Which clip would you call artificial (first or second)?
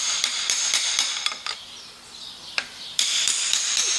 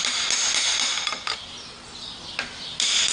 first